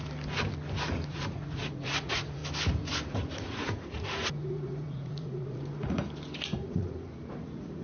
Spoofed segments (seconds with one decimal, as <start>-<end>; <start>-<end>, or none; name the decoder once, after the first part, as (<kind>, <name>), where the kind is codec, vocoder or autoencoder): 1.1-2.4 (vocoder, Vocos); 3.1-6.0; 6.7-7.8